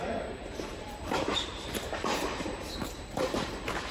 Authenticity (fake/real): fake